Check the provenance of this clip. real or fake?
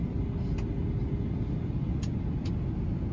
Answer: real